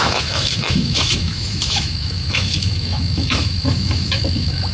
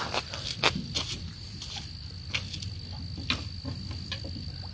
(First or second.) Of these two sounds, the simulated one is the first